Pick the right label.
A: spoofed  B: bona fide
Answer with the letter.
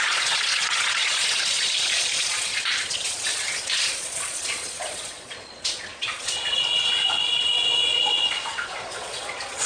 A